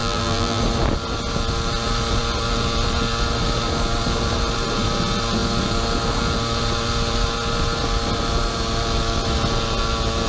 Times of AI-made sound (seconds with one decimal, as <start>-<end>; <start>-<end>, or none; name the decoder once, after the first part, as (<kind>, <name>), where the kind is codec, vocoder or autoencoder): 0.0-0.6 (vocoder, BigVGAN v2)